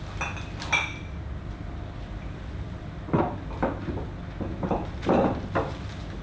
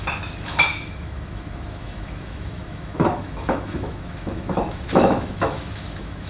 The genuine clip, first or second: first